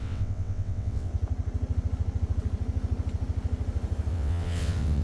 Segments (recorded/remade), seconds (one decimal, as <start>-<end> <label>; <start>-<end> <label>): 0.0-1.1 remade; 1.1-4.1 recorded; 4.1-5.0 remade